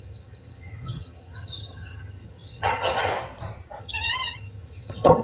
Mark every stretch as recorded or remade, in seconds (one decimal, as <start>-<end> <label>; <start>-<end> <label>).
0.0-3.1 remade; 3.1-3.8 recorded; 3.8-5.2 remade